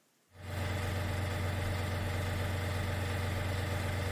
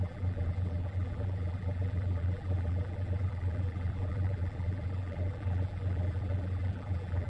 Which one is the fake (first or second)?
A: second